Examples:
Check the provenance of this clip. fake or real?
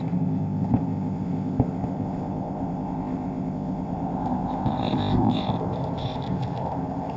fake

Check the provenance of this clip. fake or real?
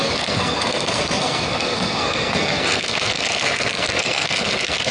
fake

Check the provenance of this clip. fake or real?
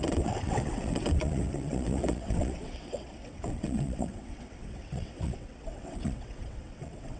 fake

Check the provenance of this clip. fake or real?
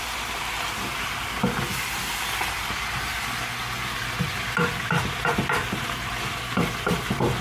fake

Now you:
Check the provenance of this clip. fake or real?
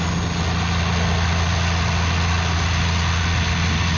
real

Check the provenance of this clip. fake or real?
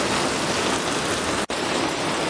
real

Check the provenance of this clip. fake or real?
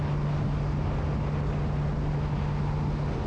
real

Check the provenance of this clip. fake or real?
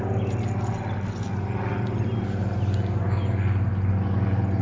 real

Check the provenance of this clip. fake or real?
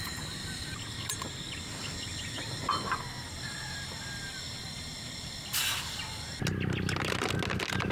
real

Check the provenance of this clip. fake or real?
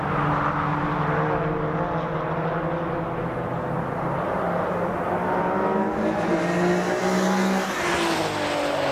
real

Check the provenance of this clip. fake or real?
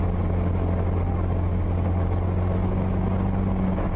real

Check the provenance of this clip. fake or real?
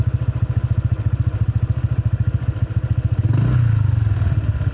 real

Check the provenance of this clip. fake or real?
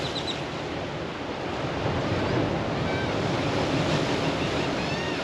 real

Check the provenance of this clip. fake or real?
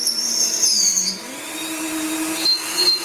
fake